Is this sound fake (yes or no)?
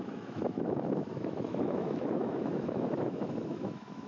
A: yes